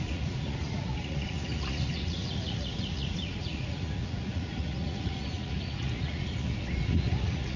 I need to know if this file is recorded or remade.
remade